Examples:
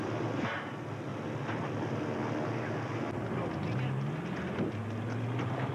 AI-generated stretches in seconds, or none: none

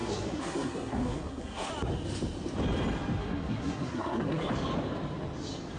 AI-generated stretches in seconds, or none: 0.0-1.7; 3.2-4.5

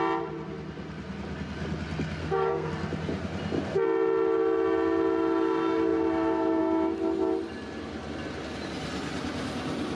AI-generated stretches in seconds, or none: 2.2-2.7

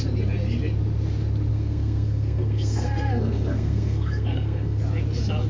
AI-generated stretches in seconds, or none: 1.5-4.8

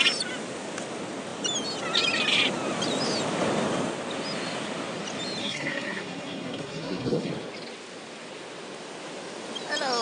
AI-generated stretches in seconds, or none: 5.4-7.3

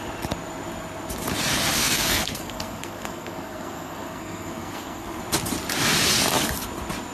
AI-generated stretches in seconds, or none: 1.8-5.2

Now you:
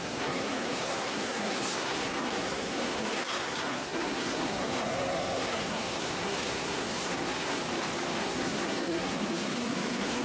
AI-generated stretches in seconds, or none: 0.0-7.6; 8.2-10.2